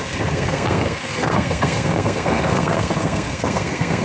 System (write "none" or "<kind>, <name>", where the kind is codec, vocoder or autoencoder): codec, SNAC